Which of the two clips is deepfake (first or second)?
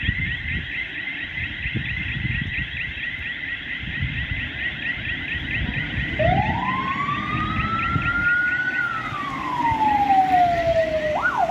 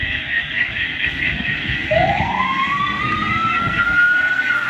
second